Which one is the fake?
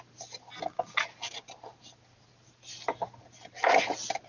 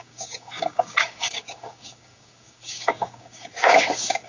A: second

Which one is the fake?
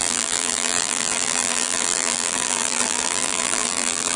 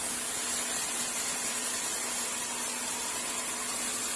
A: first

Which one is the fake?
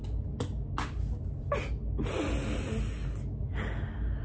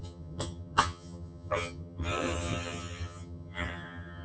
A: second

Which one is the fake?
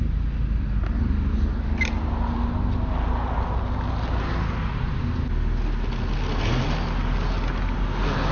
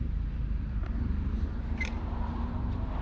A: second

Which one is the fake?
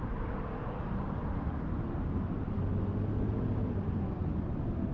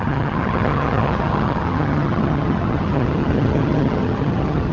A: second